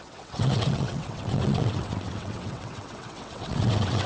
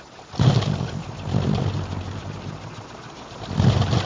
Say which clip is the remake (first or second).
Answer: first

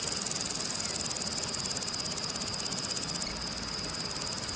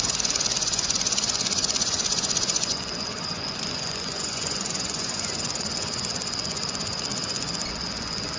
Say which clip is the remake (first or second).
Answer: second